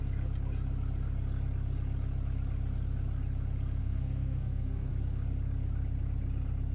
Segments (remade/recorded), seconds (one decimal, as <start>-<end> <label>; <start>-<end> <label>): 0.0-3.8 recorded; 3.8-4.9 remade; 4.9-6.7 recorded